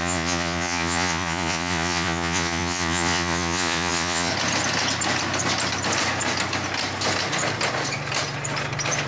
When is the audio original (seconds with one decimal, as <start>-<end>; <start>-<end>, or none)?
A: 4.3-9.1